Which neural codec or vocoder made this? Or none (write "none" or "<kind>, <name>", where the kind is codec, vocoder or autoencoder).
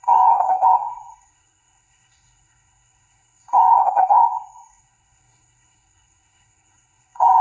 codec, SNAC